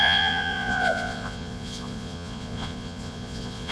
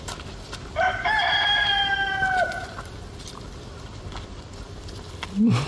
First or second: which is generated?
first